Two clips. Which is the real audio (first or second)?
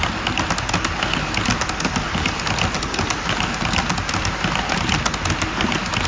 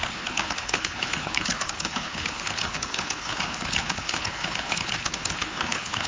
first